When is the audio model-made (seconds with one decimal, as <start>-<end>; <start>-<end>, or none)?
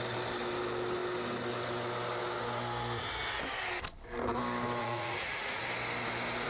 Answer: 4.8-5.6